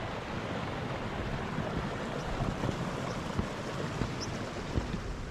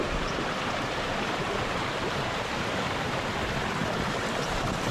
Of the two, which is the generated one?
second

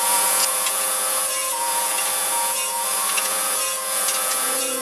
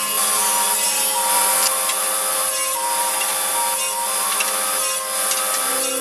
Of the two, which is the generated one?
first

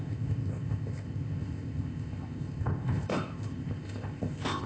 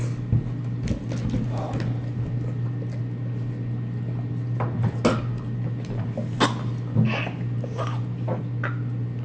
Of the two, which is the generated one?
first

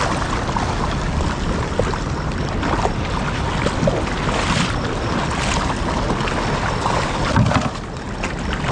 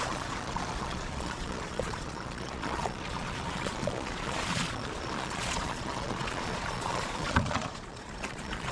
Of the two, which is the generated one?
second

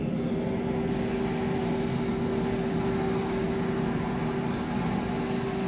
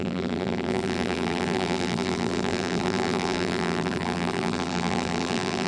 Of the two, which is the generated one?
second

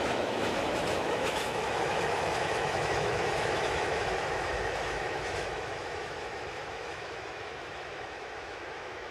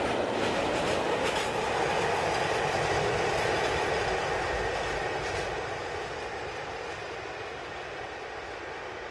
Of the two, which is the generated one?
first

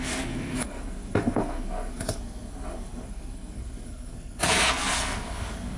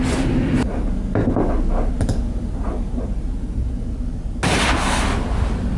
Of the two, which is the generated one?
first